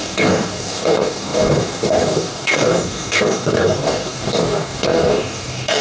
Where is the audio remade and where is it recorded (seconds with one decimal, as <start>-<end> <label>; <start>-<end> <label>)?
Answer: 0.0-5.8 remade